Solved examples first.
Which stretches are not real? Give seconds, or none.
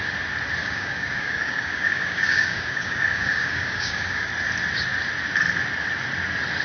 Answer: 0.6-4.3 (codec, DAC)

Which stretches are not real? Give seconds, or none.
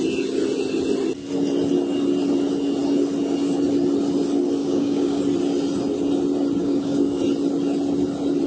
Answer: 4.6-5.2 (codec, DAC); 6.6-7.2